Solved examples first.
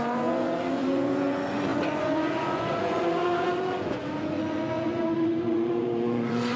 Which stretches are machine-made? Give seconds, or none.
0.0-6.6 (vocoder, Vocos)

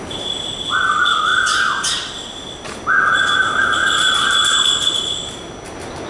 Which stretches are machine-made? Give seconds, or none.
none